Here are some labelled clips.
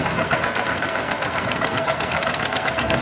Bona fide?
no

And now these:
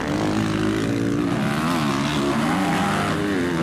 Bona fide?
yes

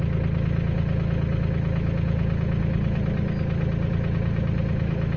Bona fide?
yes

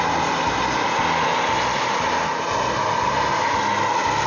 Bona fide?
yes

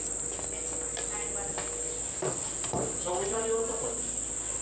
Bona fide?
yes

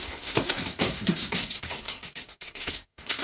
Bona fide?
no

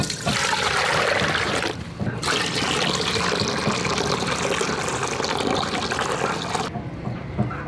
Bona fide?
yes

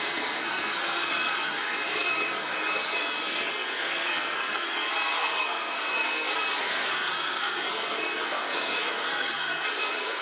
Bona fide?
no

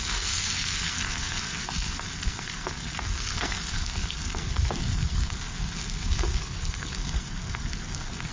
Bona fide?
no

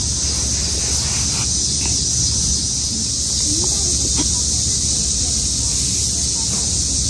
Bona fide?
yes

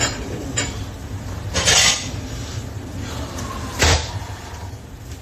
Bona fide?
yes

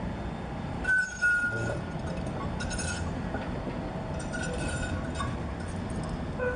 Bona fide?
yes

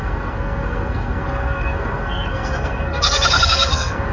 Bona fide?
no